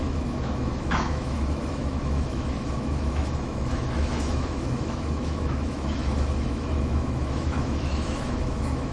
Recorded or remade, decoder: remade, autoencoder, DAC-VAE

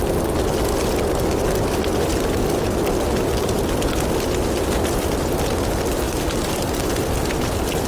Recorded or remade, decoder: recorded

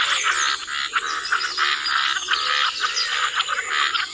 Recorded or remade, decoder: recorded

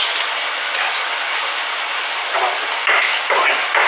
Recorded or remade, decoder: recorded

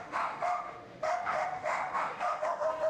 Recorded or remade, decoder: remade, autoencoder, DAC-VAE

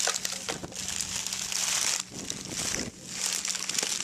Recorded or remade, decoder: recorded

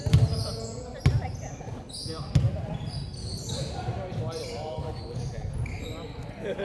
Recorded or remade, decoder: recorded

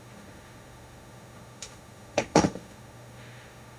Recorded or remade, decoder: remade, autoencoder, DAC-VAE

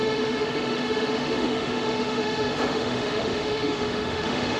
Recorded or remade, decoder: remade, autoencoder, DAC-VAE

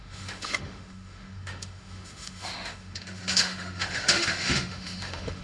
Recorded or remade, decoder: remade, autoencoder, DAC-VAE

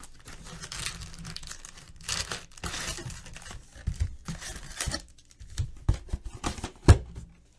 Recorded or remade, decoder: recorded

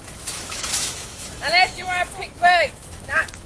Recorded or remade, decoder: remade, autoencoder, DAC-VAE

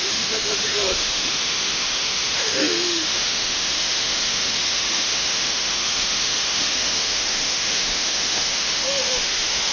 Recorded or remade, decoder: remade, autoencoder, DAC-VAE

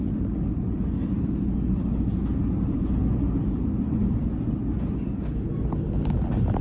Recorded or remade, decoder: recorded